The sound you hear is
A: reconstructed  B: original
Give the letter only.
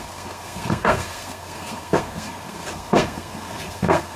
A